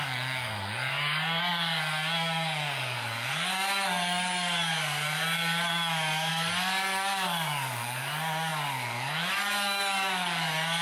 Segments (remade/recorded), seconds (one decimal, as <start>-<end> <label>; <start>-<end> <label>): 0.0-10.8 remade